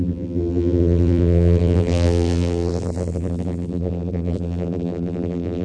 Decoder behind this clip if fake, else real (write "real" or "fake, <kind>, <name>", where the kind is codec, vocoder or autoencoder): fake, vocoder, BigVGAN v2